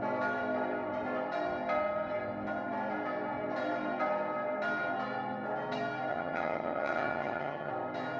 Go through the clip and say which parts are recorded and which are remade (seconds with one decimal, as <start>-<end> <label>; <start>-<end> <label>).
0.0-6.1 recorded; 6.1-7.7 remade; 7.7-8.2 recorded